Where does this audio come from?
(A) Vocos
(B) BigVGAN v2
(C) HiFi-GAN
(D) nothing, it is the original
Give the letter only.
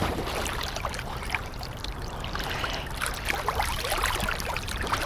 B